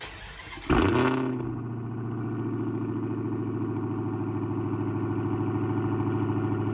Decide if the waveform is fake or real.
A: real